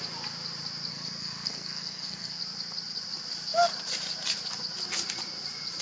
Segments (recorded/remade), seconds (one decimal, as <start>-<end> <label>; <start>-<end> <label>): 0.0-0.9 recorded; 0.9-2.4 remade; 2.4-5.8 recorded